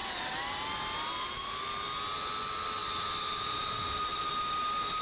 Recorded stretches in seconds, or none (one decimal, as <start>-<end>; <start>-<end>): 1.1-2.8; 4.3-5.0